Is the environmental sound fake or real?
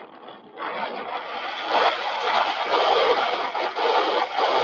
real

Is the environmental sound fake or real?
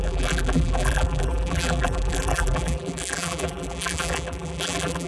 fake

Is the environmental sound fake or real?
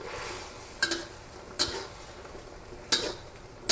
real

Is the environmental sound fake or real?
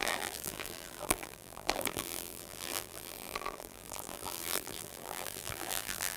fake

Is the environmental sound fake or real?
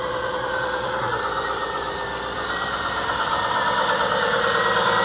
fake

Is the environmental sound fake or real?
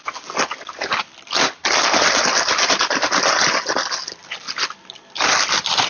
real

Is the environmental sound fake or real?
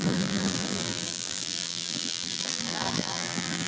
fake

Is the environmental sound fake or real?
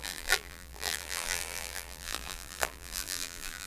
fake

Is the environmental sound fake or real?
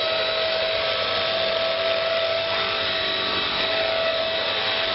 fake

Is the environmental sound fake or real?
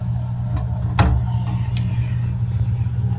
real